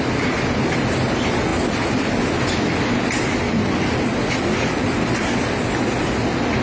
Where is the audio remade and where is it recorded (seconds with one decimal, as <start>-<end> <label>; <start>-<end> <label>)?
0.0-6.6 recorded